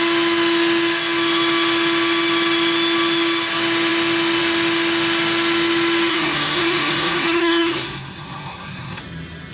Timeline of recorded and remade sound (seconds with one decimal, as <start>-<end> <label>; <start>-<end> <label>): 0.0-6.1 recorded; 6.1-9.0 remade; 9.0-9.5 recorded